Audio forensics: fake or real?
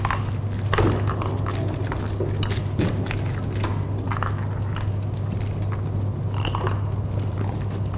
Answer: real